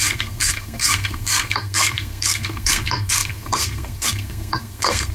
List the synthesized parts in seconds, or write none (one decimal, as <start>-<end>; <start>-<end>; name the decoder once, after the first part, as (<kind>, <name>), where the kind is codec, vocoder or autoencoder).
0.0-5.1 (codec, SNAC)